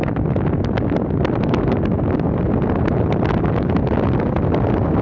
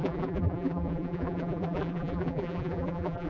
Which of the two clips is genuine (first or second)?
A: first